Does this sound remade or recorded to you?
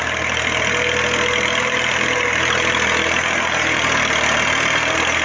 recorded